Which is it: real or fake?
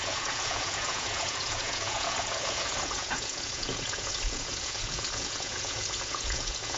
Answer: fake